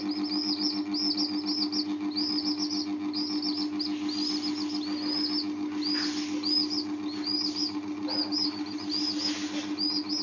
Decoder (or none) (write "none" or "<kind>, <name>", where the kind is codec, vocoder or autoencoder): none